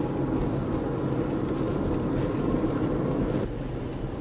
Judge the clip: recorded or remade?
recorded